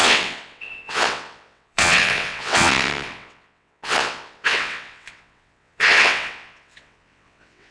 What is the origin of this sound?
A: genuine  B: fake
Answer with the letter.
B